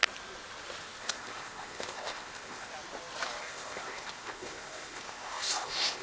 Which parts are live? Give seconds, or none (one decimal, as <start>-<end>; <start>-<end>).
0.0-1.0; 2.7-3.4